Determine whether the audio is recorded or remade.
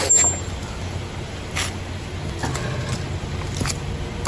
recorded